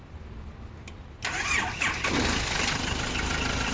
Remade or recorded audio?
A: recorded